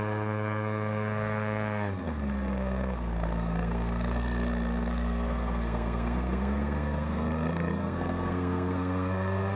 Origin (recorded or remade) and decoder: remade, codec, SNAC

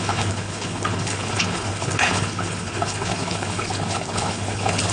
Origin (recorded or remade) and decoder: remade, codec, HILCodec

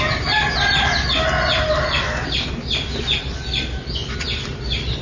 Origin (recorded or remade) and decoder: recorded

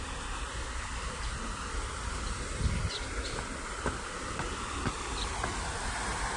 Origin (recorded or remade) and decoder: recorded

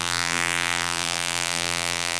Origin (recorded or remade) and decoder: remade, vocoder, BigVGAN v2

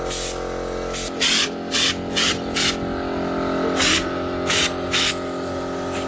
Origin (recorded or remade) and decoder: recorded